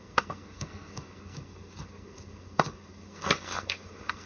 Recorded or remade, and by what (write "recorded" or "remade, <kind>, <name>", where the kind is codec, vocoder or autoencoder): remade, codec, SNAC